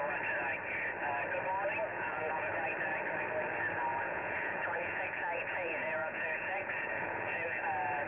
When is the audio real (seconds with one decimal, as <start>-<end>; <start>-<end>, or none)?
0.0-1.9; 2.5-3.9; 7.6-8.1